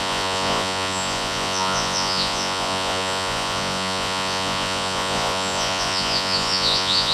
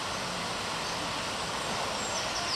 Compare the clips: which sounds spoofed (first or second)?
first